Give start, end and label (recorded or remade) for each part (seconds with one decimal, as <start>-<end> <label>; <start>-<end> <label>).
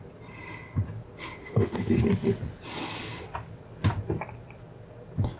0.0-1.4 recorded; 1.4-2.0 remade; 2.0-5.4 recorded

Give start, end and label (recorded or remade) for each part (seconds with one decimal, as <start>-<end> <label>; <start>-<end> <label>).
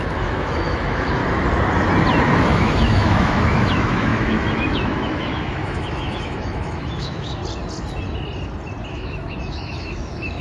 0.0-1.2 remade; 1.2-2.4 recorded; 2.4-7.4 remade; 7.4-8.9 recorded; 8.9-10.4 remade